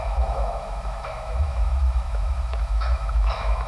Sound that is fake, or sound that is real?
fake